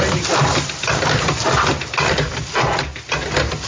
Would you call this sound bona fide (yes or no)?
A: yes